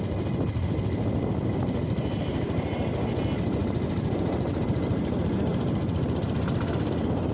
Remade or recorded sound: recorded